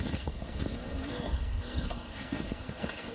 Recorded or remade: remade